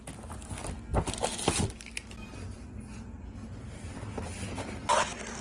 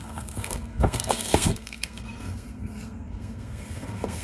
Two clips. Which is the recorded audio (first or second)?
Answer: first